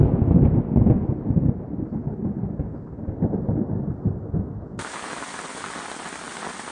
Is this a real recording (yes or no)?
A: yes